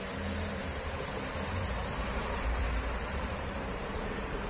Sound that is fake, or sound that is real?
fake